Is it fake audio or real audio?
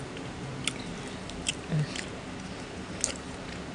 real